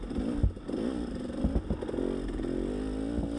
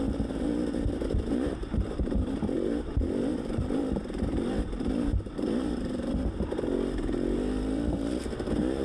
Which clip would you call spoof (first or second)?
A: second